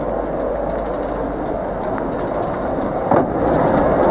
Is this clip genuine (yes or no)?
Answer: yes